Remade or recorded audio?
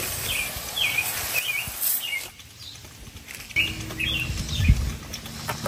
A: recorded